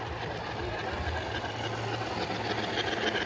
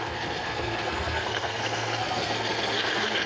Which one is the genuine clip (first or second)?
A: first